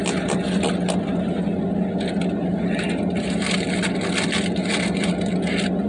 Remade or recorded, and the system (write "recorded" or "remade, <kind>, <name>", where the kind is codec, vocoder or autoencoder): recorded